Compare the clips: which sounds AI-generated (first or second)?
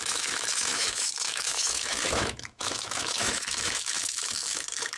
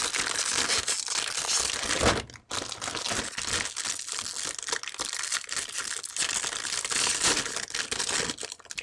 first